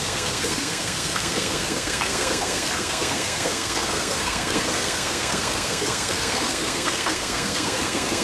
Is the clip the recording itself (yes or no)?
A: no